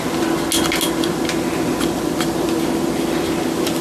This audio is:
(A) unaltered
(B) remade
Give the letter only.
A